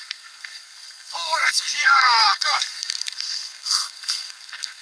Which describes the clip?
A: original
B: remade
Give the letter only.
B